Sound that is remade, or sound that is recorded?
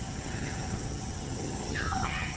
remade